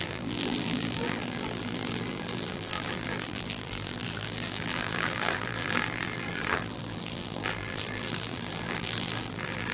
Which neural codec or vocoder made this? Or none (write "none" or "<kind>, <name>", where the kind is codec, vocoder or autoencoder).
vocoder, BigVGAN v2